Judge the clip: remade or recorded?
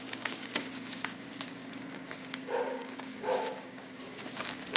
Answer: remade